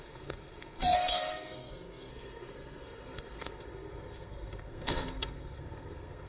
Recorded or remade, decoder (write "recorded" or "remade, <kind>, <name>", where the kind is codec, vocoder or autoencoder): remade, codec, SNAC